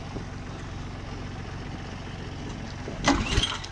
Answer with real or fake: real